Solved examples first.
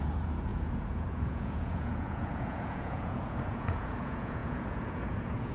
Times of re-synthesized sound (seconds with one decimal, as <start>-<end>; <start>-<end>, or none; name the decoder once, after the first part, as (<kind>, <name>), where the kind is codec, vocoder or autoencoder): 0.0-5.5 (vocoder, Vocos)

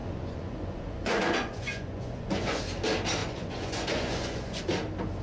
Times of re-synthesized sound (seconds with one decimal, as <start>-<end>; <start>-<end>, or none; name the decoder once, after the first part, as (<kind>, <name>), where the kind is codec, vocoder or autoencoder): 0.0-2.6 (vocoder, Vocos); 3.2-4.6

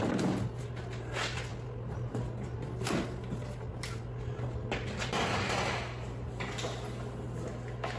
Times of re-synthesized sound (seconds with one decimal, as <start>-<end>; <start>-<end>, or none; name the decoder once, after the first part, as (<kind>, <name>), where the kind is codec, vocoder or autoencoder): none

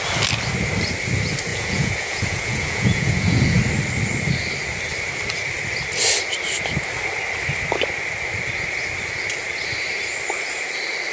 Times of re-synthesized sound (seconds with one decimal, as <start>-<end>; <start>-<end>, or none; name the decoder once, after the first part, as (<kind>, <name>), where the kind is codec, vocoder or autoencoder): 1.5-3.6 (vocoder, Vocos)

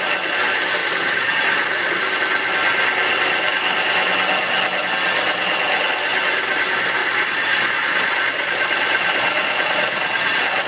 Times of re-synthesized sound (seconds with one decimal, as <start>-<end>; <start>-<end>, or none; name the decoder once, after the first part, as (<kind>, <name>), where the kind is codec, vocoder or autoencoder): 0.8-2.0 (vocoder, Vocos); 7.0-10.7